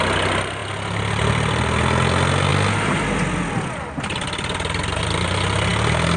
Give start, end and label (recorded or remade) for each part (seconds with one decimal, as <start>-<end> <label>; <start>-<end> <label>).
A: 0.0-6.2 recorded